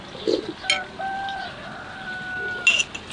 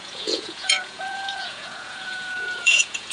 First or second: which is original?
first